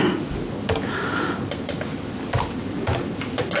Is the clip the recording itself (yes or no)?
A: yes